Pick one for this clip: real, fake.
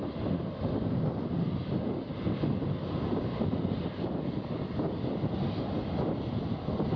real